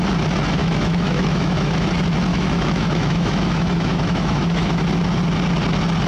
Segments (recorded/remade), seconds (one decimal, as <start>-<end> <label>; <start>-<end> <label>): 0.0-0.6 recorded; 0.6-1.9 remade; 1.9-2.3 recorded; 2.3-4.8 remade; 4.8-6.1 recorded